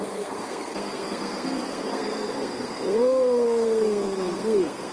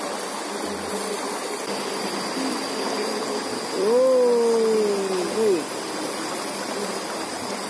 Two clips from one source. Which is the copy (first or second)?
first